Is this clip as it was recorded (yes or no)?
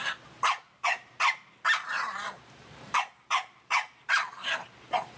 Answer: no